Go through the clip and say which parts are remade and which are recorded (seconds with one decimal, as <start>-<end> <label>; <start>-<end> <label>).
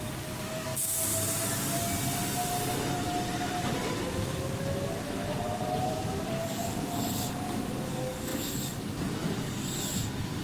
0.0-1.1 remade; 1.1-6.3 recorded; 6.3-10.4 remade